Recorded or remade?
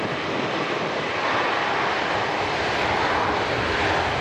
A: remade